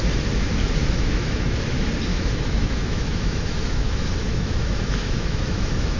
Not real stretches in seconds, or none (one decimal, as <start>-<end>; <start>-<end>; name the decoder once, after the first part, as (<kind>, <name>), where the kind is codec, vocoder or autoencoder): 0.8-1.6 (autoencoder, DAC-VAE); 2.1-6.0